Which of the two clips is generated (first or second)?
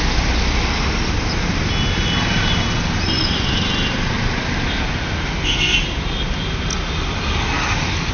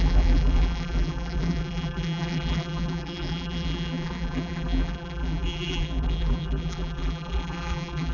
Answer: second